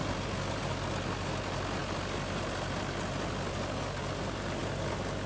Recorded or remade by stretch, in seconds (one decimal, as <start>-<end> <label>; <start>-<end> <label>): 0.0-5.3 recorded